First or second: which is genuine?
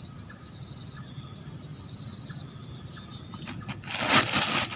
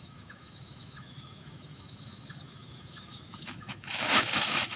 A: first